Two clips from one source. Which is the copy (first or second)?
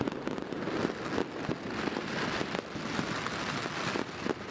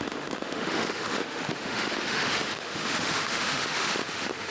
second